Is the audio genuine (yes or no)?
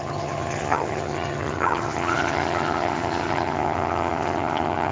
no